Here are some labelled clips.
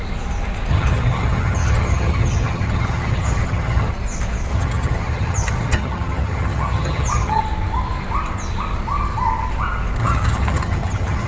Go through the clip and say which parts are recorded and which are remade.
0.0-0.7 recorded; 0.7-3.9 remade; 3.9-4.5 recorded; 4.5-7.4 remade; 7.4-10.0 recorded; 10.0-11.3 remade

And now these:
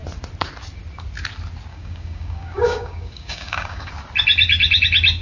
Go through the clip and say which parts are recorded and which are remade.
0.0-1.7 recorded; 1.7-3.9 remade; 3.9-5.2 recorded

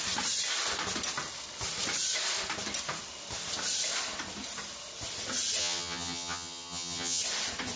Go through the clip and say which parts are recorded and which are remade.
0.0-5.6 recorded; 5.6-7.2 remade; 7.2-7.8 recorded

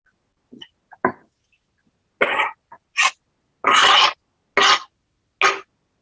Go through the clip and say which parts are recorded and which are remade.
0.0-6.0 recorded

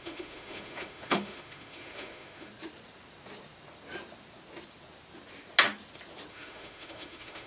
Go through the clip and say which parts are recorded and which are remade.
0.0-2.5 remade; 2.5-6.3 recorded; 6.3-7.5 remade

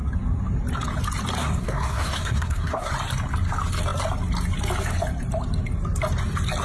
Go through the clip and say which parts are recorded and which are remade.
0.0-1.4 recorded; 1.4-2.9 remade; 2.9-6.6 recorded

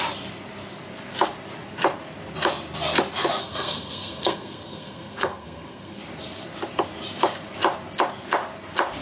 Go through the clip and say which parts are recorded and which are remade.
0.0-3.4 recorded; 3.4-6.0 remade; 6.0-9.0 recorded